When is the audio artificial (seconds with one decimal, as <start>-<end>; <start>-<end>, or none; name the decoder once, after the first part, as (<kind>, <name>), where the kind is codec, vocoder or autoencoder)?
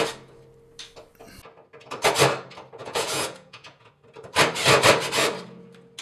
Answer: 2.8-3.9 (vocoder, Vocos)